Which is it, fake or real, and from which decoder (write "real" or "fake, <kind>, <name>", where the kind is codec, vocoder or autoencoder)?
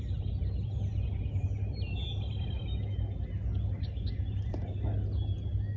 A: real